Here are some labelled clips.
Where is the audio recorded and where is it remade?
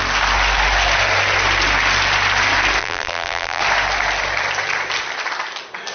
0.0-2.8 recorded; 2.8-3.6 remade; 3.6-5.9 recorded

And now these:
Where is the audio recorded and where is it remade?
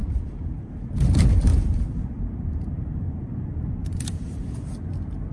0.0-0.7 remade; 0.7-1.5 recorded; 1.5-4.7 remade; 4.7-5.3 recorded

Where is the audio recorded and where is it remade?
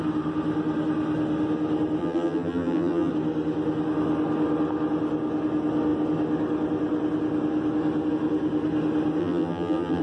0.0-2.0 recorded; 2.0-3.1 remade; 3.1-9.2 recorded; 9.2-10.0 remade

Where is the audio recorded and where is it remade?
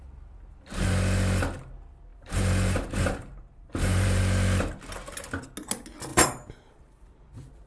0.0-2.1 recorded; 2.1-4.2 remade; 4.2-6.1 recorded; 6.1-6.9 remade; 6.9-7.7 recorded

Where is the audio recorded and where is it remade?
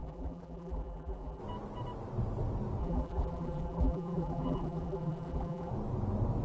0.0-1.4 remade; 1.4-2.8 recorded; 2.8-5.7 remade; 5.7-6.4 recorded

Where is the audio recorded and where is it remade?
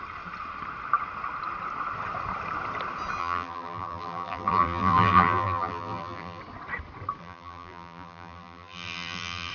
0.0-3.2 recorded; 3.2-6.4 remade; 6.4-7.2 recorded; 7.2-9.5 remade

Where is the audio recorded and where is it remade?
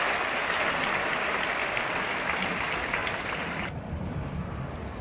0.0-1.6 recorded; 1.6-2.5 remade; 2.5-3.0 recorded; 3.0-5.0 remade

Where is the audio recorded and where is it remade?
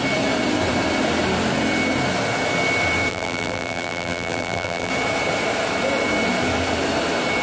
0.0-3.1 recorded; 3.1-4.9 remade; 4.9-7.4 recorded